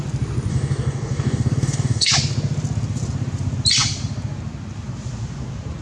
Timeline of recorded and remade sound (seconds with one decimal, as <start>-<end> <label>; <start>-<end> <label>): 0.0-0.5 recorded; 0.5-2.1 remade; 2.1-5.8 recorded

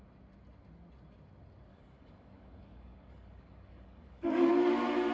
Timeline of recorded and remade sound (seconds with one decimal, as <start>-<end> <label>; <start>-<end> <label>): 0.0-1.7 recorded; 1.7-4.5 remade; 4.5-5.1 recorded

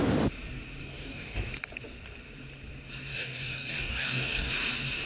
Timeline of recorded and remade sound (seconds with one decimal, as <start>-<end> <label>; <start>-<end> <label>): 0.0-0.8 recorded; 0.8-1.5 remade; 1.5-3.1 recorded; 3.1-4.5 remade; 4.5-5.1 recorded